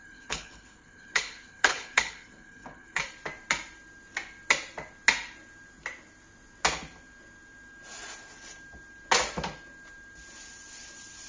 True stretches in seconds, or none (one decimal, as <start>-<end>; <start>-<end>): 3.0-11.3